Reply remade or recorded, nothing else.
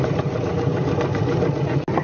remade